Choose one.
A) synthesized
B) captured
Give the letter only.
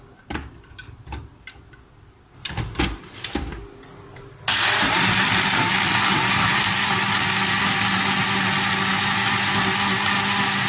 B